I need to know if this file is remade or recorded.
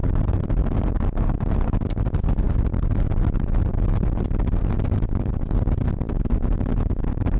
recorded